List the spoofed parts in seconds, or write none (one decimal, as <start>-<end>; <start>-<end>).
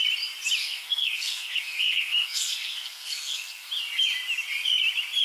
0.6-3.7